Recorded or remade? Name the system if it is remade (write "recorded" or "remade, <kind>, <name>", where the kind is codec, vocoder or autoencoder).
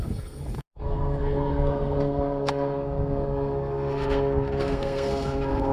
remade, codec, SNAC